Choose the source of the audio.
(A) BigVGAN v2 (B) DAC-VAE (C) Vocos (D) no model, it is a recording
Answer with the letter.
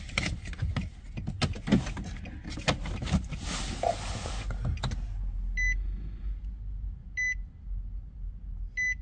D